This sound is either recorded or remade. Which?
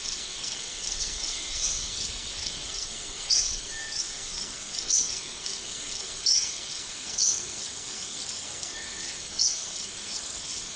remade